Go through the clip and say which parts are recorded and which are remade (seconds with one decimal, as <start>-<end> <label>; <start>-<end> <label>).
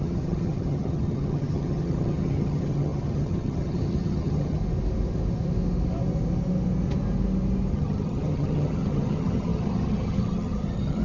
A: 0.0-4.6 remade; 4.6-7.7 recorded; 7.7-11.0 remade